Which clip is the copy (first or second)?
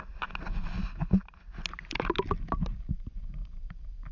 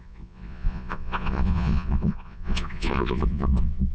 second